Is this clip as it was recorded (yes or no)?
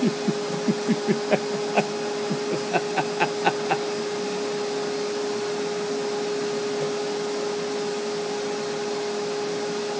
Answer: yes